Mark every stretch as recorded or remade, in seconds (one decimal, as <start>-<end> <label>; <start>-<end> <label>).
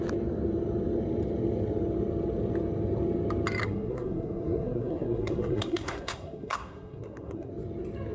0.0-3.6 recorded; 3.6-7.5 remade; 7.5-8.1 recorded